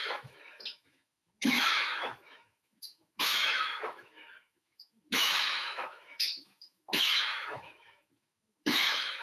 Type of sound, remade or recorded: remade